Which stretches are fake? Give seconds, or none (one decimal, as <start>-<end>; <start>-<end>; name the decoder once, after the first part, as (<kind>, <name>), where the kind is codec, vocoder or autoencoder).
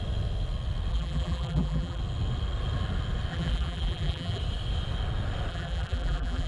0.9-2.0 (vocoder, BigVGAN v2); 3.3-4.4; 5.5-6.5